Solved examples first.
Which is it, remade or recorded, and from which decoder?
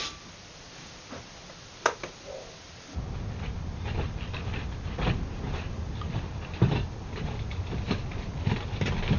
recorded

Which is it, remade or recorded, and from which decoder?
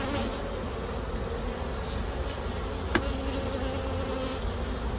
recorded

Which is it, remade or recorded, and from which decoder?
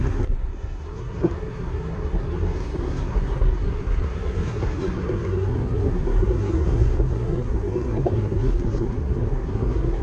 remade, codec, SNAC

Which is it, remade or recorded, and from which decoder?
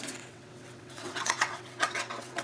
remade, vocoder, WaveNeXt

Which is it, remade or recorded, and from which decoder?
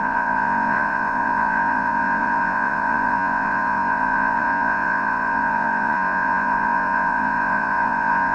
remade, vocoder, Vocos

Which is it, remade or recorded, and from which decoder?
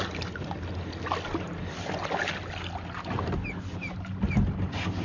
recorded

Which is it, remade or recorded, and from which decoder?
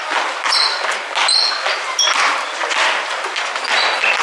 recorded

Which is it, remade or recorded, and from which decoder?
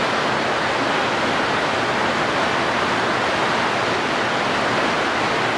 recorded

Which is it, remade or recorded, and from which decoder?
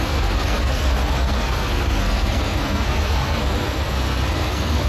remade, codec, SNAC